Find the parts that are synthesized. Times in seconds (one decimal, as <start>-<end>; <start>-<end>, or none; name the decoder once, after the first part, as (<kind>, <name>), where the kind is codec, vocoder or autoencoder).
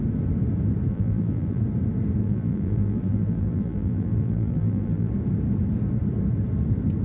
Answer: 0.9-1.6 (vocoder, BigVGAN v2); 2.2-5.1